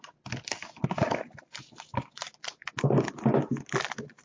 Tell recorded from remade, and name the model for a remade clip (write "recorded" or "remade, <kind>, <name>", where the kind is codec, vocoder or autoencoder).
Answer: recorded